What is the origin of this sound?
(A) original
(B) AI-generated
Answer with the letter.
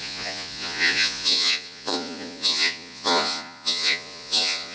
B